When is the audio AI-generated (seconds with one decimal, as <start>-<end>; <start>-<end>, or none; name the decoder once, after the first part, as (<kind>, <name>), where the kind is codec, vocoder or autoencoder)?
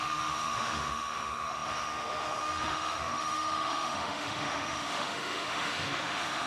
0.0-6.5 (autoencoder, DAC-VAE)